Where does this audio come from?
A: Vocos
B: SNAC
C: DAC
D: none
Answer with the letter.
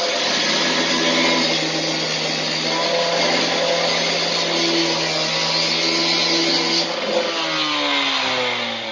D